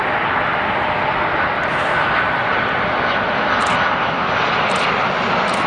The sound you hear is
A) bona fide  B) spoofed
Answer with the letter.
A